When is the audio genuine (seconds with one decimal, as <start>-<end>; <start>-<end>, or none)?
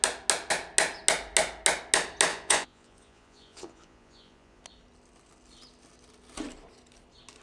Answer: 0.0-2.3; 4.6-7.4